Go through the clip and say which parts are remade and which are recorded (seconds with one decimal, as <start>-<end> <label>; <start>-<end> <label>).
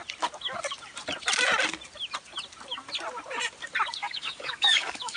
0.0-4.0 recorded; 4.0-5.2 remade